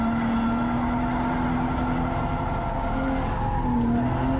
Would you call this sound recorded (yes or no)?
yes